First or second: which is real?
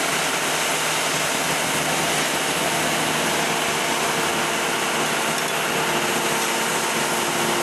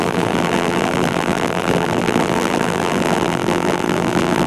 first